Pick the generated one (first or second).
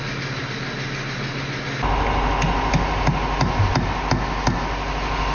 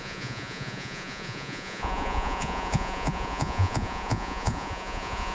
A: second